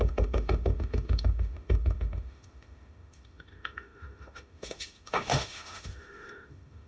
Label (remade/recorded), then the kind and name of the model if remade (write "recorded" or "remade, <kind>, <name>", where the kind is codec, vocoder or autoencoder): remade, autoencoder, DAC-VAE